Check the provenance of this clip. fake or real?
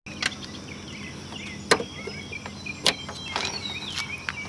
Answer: real